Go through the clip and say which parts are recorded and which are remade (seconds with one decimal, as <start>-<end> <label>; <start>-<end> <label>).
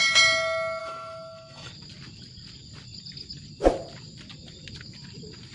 0.0-0.8 recorded; 0.8-1.7 remade; 1.7-5.5 recorded